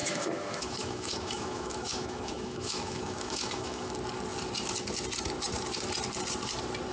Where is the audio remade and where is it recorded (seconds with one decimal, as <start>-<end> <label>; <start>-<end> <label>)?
0.0-3.9 remade; 3.9-6.9 recorded